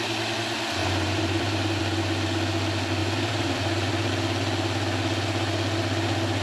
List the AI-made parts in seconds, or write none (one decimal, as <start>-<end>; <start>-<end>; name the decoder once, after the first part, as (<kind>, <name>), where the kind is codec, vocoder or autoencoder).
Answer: 0.8-1.8 (vocoder, BigVGAN v2); 3.0-4.1

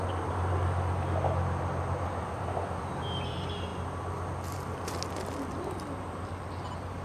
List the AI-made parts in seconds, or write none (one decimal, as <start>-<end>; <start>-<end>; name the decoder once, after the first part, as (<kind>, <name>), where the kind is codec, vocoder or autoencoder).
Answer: none